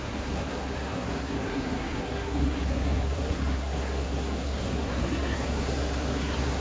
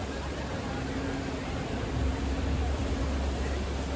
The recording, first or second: second